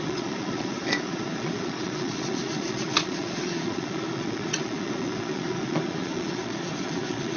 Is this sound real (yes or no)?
no